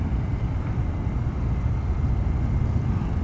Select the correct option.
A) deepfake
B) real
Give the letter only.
B